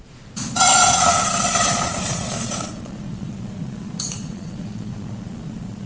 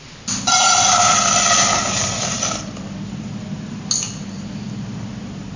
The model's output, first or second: first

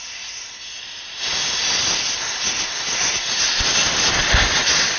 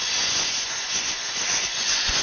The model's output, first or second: second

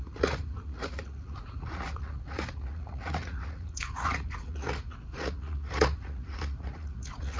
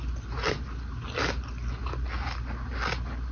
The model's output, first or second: first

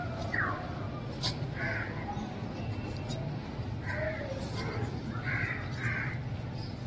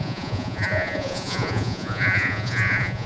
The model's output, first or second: second